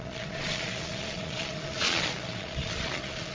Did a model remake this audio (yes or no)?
yes